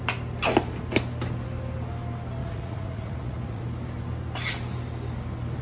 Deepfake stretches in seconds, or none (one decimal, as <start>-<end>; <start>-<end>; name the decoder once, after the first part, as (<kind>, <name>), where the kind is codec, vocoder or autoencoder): 2.4-3.6 (vocoder, Vocos)